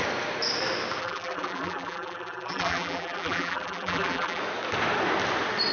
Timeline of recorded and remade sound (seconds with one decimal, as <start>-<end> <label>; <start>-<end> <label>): 0.0-1.0 recorded; 1.0-4.4 remade; 4.4-5.7 recorded